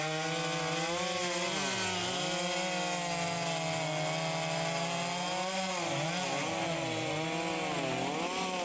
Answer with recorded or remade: recorded